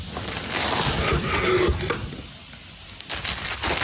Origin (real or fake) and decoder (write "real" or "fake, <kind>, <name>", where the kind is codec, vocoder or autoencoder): real